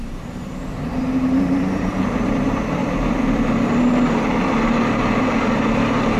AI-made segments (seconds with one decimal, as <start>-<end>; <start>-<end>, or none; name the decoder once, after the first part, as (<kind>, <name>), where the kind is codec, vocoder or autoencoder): 0.0-2.8 (vocoder, BigVGAN v2); 5.2-6.2